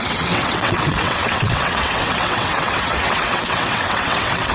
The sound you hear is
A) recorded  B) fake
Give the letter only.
B